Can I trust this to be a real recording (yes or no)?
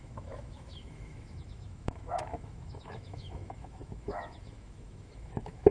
no